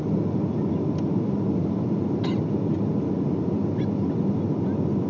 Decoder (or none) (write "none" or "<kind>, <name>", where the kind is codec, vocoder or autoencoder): none